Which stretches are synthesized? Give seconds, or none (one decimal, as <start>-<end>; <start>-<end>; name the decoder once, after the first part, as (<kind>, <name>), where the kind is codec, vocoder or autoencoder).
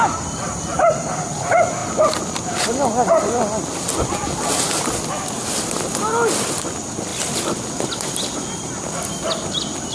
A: 1.8-4.9 (vocoder, BigVGAN v2)